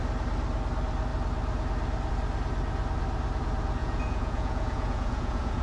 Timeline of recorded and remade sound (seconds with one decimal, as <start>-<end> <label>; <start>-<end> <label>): 0.0-3.8 recorded; 3.8-5.6 remade